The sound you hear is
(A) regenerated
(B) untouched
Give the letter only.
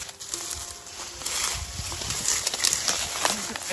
B